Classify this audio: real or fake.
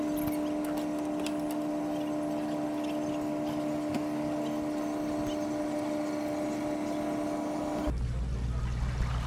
real